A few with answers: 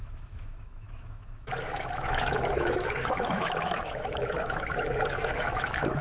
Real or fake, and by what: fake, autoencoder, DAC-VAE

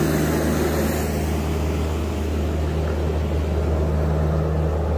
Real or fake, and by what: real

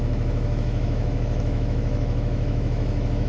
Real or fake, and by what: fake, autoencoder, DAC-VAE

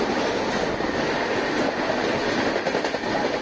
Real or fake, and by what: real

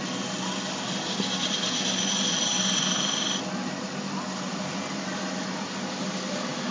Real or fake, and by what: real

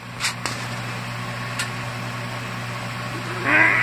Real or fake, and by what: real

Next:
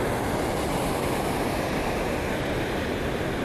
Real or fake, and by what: real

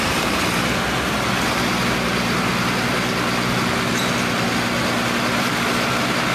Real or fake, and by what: real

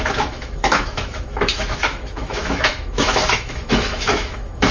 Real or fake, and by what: fake, autoencoder, DAC-VAE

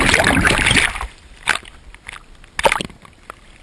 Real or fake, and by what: real